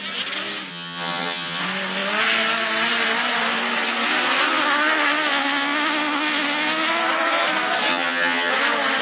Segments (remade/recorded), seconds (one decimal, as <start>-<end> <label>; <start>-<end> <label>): 0.0-0.7 recorded; 0.7-1.6 remade; 1.6-7.9 recorded; 7.9-8.5 remade; 8.5-9.0 recorded